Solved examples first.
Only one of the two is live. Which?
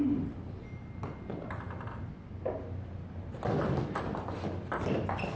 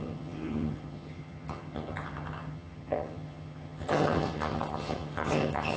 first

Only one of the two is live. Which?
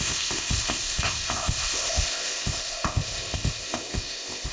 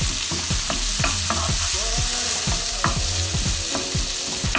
second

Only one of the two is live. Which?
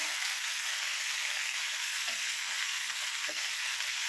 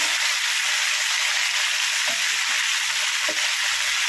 second